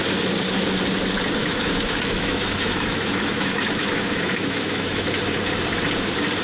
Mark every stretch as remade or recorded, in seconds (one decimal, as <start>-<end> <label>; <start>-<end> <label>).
0.0-1.4 recorded; 1.4-5.2 remade; 5.2-6.4 recorded